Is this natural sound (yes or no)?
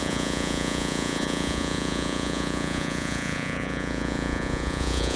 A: no